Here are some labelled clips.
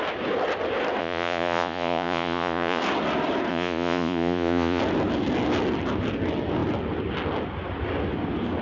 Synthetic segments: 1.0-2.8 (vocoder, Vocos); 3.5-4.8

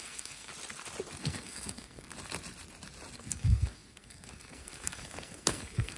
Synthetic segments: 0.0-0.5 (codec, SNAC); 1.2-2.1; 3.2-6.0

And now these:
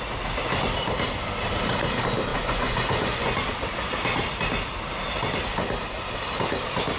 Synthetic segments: 2.3-3.4 (vocoder, Vocos)

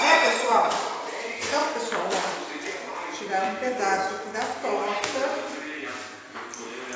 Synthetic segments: none

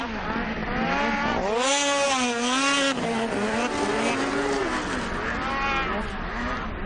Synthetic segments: none

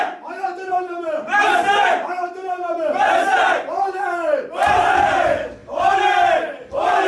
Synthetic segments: 0.0-7.1 (vocoder, BigVGAN v2)

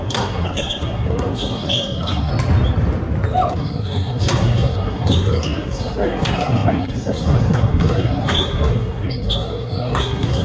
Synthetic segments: 0.0-2.3 (codec, SNAC); 3.5-10.4